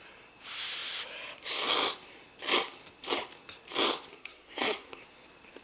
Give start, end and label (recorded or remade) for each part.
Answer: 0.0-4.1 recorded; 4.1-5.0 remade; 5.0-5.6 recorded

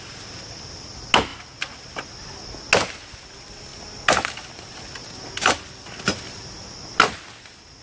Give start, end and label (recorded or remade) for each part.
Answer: 0.0-7.8 recorded

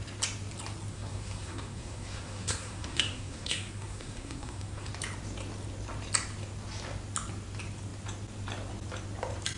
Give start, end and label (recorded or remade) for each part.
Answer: 0.0-0.9 recorded; 0.9-4.9 remade; 4.9-9.6 recorded

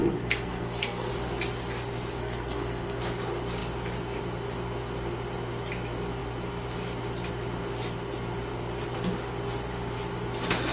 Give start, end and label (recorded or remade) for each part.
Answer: 0.0-1.1 remade; 1.1-2.2 recorded; 2.2-3.0 remade; 3.0-10.7 recorded